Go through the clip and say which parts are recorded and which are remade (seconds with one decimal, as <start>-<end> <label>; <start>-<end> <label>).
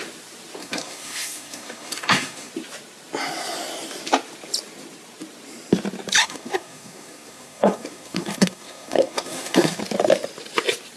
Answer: 0.0-0.6 recorded; 0.6-2.5 remade; 2.5-6.2 recorded; 6.2-9.8 remade; 9.8-11.0 recorded